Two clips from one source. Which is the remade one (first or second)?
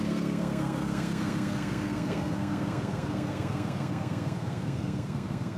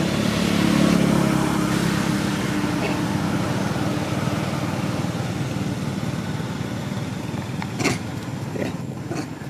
first